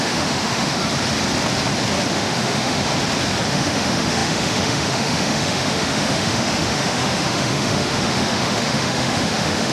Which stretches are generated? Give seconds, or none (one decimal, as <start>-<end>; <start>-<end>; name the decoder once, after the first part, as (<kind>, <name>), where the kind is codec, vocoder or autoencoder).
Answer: 0.0-0.8 (autoencoder, DAC-VAE); 2.1-2.9; 3.5-9.7